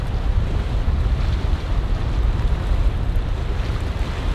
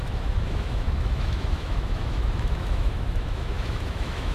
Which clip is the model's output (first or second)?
second